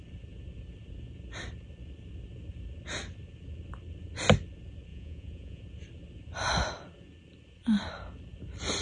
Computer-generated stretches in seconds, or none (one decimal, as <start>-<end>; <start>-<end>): 4.9-5.6